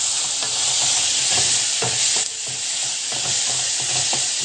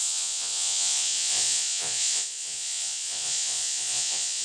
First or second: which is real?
first